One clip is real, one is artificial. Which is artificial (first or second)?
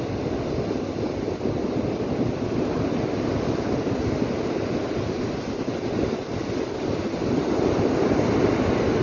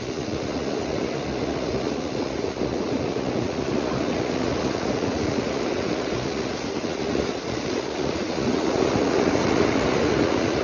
second